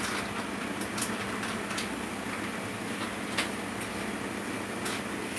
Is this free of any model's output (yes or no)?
yes